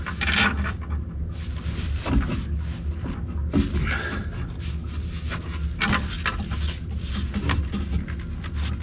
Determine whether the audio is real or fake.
real